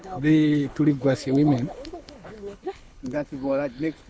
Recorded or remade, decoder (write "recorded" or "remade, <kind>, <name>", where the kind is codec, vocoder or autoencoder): remade, codec, HILCodec